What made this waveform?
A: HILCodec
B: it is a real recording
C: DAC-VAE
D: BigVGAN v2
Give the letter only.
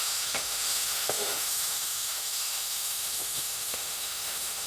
C